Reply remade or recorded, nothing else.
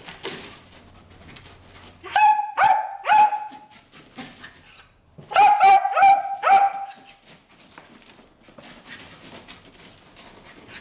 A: recorded